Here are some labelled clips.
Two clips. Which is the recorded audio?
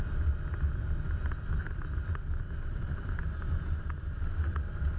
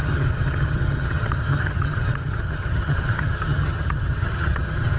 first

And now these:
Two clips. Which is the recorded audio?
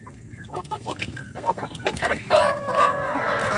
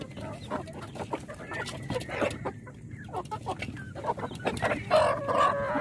second